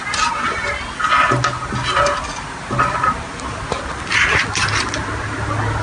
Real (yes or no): yes